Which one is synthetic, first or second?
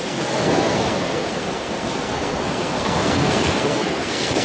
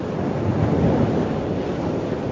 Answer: first